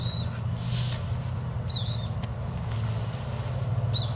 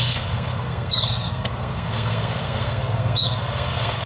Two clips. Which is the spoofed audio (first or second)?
second